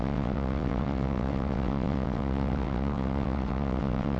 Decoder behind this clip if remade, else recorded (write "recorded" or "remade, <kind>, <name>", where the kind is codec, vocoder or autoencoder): remade, vocoder, WaveNeXt